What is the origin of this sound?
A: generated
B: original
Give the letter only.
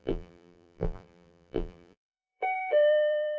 A